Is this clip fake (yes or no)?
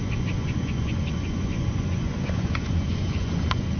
yes